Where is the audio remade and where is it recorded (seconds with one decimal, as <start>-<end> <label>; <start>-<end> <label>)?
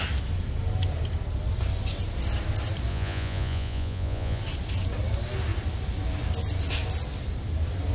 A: 0.0-2.9 recorded; 2.9-4.4 remade; 4.4-7.9 recorded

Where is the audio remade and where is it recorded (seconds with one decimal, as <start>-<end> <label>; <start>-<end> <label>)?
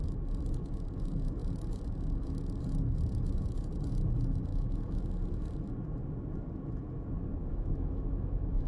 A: 0.0-4.5 recorded; 4.5-5.0 remade; 5.0-7.5 recorded; 7.5-8.7 remade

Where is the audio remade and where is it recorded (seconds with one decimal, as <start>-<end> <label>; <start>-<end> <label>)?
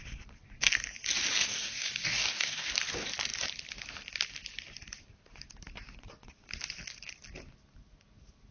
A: 0.0-1.5 recorded; 1.5-2.7 remade; 2.7-8.5 recorded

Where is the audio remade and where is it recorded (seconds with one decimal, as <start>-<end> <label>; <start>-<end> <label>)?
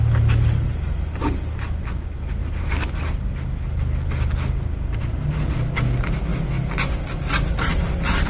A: 0.0-8.3 recorded